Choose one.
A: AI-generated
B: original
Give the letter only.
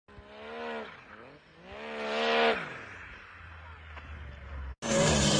B